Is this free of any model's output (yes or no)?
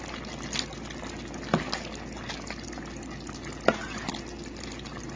yes